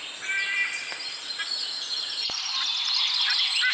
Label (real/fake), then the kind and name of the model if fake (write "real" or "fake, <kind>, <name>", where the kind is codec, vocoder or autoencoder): real